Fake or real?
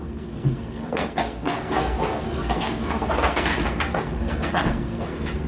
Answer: fake